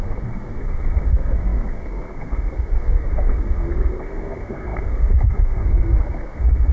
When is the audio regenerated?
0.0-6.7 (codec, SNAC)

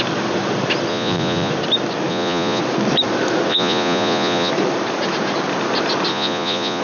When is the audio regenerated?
0.9-1.5 (vocoder, Vocos); 2.1-2.6; 3.5-4.5; 6.1-6.8

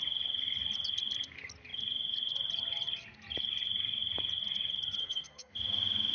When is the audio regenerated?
5.0-5.6 (codec, SNAC)

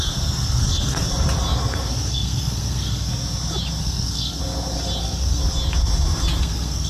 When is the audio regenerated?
0.0-1.1 (codec, SNAC); 1.9-3.1; 3.8-4.4; 5.0-5.4; 6.4-6.9